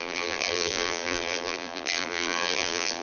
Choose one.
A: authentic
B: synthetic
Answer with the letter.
B